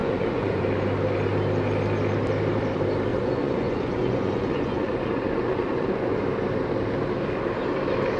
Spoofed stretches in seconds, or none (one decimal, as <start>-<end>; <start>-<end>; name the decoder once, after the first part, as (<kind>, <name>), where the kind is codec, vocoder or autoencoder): 0.0-0.6 (vocoder, Vocos); 3.1-6.2